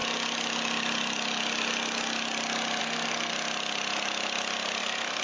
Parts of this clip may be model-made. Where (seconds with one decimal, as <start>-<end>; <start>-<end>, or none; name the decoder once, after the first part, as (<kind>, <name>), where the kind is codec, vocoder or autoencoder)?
2.8-3.3 (codec, SNAC); 4.8-5.2